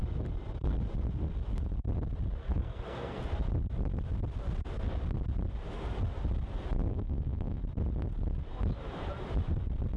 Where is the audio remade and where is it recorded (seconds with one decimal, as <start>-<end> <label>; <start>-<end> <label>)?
0.0-2.4 recorded; 2.4-3.2 remade; 3.2-6.9 recorded; 6.9-7.6 remade; 7.6-10.0 recorded